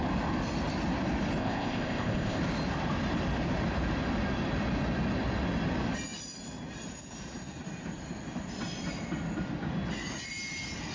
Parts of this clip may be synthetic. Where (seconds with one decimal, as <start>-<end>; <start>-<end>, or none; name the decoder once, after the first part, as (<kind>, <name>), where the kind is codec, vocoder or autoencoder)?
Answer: 1.4-2.4 (codec, ZipCodec)